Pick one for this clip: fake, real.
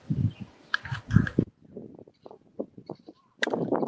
real